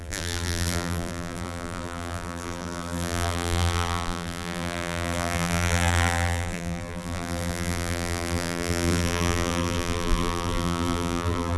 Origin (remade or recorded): remade